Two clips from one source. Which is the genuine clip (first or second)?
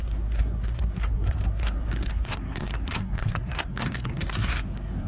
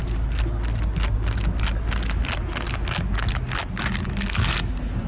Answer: second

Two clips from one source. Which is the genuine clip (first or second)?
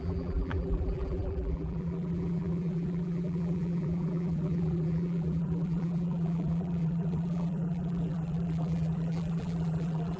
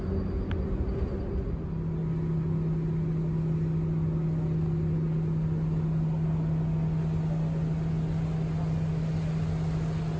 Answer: second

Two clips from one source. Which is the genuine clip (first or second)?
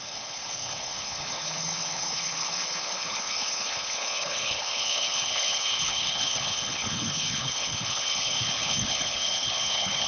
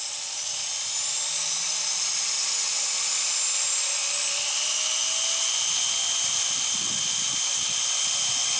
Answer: second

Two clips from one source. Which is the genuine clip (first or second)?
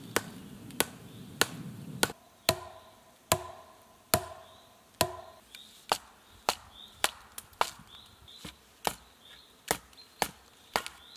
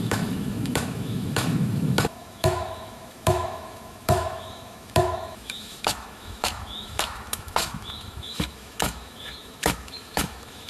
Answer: first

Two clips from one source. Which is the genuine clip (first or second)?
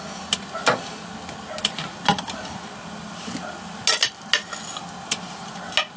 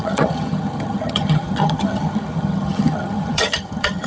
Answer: first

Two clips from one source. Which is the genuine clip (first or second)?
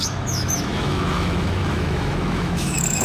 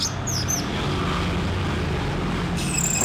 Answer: second